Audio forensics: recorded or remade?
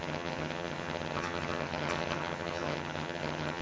remade